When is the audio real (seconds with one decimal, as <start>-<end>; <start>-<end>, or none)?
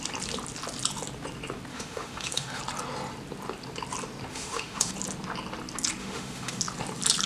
0.0-1.7; 2.6-4.3; 4.9-6.0; 6.6-7.3